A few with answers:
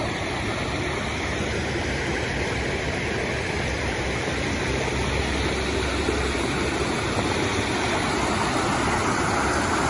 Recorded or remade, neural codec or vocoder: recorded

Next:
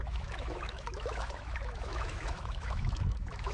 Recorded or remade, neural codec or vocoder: remade, autoencoder, DAC-VAE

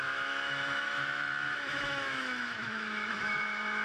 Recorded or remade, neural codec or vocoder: remade, autoencoder, DAC-VAE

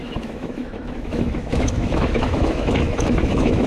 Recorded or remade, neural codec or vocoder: remade, autoencoder, DAC-VAE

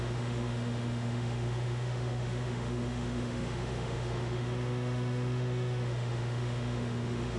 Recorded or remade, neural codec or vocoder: remade, autoencoder, DAC-VAE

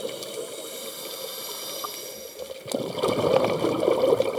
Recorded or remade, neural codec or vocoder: recorded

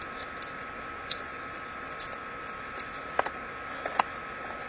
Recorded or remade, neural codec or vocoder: recorded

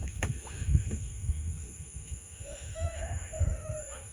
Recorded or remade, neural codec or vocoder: remade, autoencoder, DAC-VAE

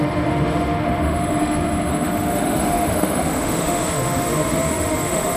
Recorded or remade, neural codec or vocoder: remade, autoencoder, DAC-VAE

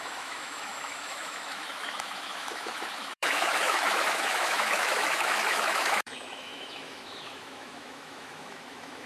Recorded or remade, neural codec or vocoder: remade, autoencoder, DAC-VAE